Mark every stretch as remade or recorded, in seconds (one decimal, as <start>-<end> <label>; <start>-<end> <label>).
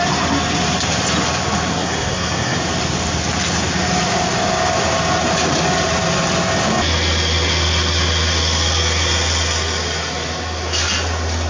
0.0-1.7 recorded; 1.7-2.6 remade; 2.6-11.5 recorded